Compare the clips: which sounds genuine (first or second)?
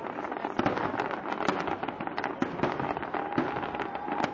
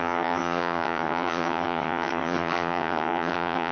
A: first